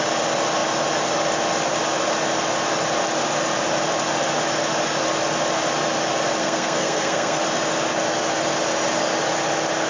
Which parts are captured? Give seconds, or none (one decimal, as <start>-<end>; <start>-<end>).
0.0-6.4; 7.4-9.9